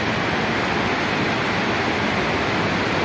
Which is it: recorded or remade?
recorded